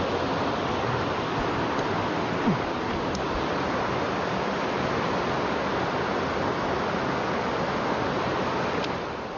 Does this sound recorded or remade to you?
recorded